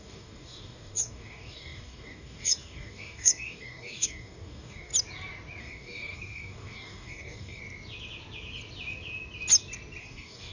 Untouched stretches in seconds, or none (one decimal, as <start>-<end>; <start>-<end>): 4.9-5.6; 7.6-10.0